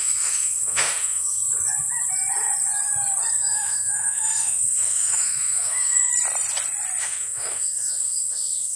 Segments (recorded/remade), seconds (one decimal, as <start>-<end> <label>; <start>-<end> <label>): 0.0-1.4 remade; 1.4-3.3 recorded; 3.3-6.1 remade; 6.1-7.0 recorded; 7.0-8.8 remade